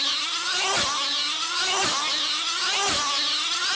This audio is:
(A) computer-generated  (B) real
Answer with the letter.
B